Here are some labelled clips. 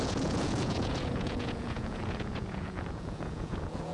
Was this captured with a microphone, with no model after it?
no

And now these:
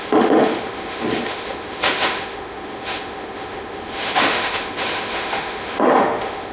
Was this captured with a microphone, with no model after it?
no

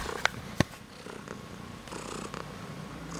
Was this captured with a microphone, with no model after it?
no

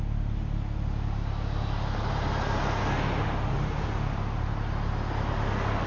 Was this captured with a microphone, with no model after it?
yes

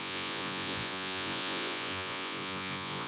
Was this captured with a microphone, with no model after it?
no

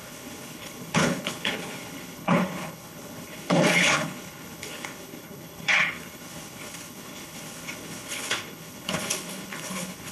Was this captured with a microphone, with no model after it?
no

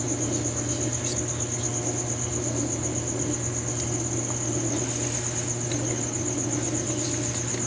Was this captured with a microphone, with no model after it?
yes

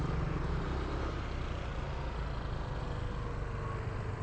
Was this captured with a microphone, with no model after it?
yes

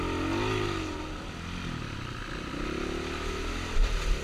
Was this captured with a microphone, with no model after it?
yes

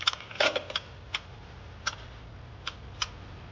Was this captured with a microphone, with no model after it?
yes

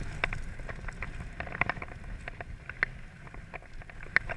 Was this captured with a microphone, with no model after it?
yes